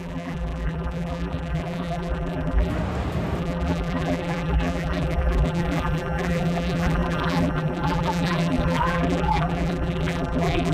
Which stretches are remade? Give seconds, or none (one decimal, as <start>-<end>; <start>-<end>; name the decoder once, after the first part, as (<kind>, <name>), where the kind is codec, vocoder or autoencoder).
0.0-2.7 (vocoder, BigVGAN v2); 3.4-10.7